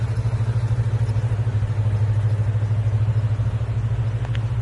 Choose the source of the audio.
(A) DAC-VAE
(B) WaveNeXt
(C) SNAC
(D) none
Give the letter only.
D